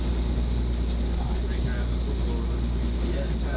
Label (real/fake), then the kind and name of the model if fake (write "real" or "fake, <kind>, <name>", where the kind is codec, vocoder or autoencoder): real